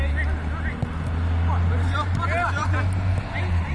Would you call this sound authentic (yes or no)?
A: yes